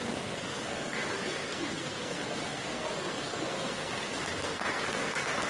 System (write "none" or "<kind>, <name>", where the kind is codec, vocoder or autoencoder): codec, SNAC